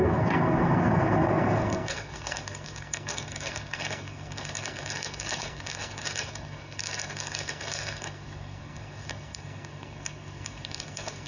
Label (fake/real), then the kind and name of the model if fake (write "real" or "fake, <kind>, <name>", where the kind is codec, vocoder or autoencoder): fake, codec, SNAC